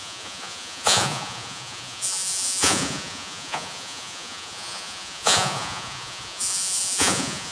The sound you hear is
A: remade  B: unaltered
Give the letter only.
A